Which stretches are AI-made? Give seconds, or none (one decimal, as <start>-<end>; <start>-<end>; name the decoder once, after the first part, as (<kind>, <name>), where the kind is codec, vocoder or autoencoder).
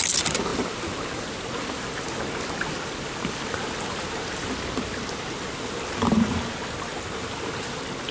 none